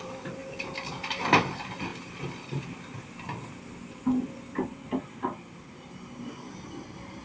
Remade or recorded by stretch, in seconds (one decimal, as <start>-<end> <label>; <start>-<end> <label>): 0.0-7.2 recorded